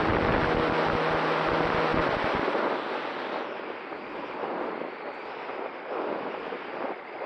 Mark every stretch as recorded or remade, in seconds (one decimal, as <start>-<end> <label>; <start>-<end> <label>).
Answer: 0.0-7.3 recorded

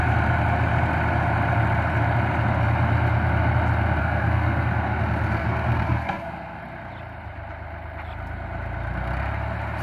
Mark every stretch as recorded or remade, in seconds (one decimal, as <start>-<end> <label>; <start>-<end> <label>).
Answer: 0.0-4.0 recorded; 4.0-5.0 remade; 5.0-5.4 recorded; 5.4-6.6 remade; 6.6-9.8 recorded

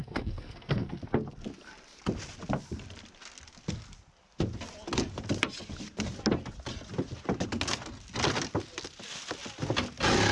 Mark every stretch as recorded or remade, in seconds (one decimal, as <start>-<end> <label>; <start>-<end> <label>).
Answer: 0.0-1.0 remade; 1.0-10.3 recorded

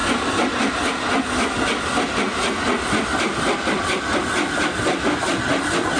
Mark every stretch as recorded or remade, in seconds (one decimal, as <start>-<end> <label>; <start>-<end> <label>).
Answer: 0.0-6.0 recorded

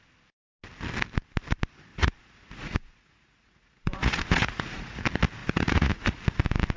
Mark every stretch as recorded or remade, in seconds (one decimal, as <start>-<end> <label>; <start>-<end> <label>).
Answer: 0.0-1.9 recorded; 1.9-5.0 remade; 5.0-5.4 recorded; 5.4-6.2 remade; 6.2-6.8 recorded

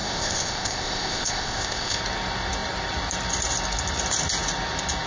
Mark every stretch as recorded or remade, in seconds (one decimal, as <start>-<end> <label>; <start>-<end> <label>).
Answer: 0.0-2.0 remade; 2.0-5.1 recorded

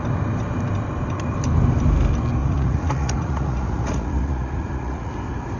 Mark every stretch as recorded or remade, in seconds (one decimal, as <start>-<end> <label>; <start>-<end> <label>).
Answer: 0.0-2.4 recorded; 2.4-5.1 remade; 5.1-5.6 recorded

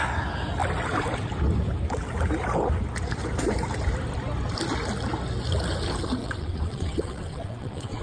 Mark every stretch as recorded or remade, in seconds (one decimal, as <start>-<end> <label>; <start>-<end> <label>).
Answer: 0.0-6.2 recorded; 6.2-8.0 remade